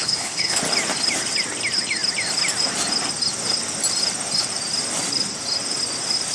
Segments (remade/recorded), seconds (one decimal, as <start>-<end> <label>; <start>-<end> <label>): 0.0-0.6 remade; 0.6-6.3 recorded